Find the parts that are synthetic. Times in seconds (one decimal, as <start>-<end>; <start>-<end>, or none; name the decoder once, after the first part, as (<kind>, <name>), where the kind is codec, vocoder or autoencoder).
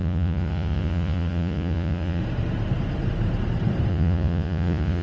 0.0-2.2 (vocoder, Vocos); 3.9-5.0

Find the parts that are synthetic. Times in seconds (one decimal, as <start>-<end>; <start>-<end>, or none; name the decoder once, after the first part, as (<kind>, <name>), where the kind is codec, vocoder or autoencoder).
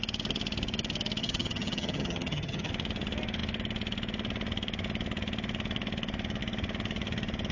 1.2-2.7 (vocoder, HiFi-GAN)